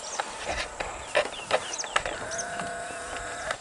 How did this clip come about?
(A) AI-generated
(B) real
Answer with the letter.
B